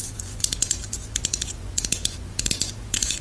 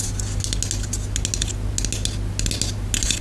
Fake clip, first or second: first